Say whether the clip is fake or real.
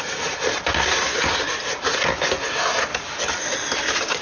real